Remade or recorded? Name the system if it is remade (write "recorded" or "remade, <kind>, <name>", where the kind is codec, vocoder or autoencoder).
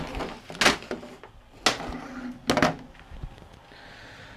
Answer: recorded